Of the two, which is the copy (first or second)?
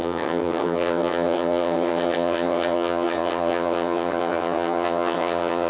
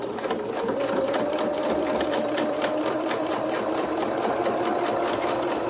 first